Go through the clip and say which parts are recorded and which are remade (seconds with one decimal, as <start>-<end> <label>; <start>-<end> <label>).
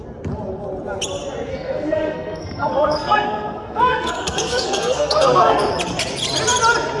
0.0-1.5 recorded; 1.5-5.7 remade; 5.7-7.0 recorded